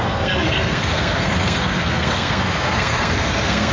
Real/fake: fake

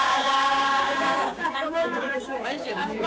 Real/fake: fake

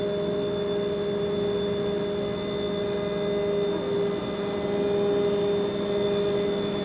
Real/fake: real